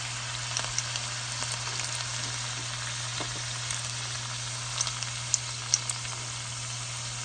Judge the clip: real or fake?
real